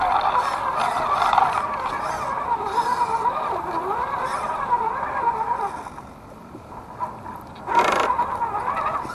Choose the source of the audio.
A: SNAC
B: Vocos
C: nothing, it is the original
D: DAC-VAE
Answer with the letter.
C